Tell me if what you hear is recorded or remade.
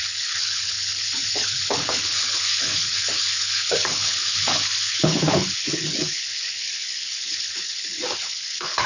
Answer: remade